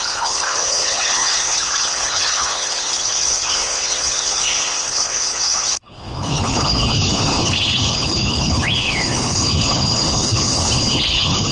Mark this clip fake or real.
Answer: fake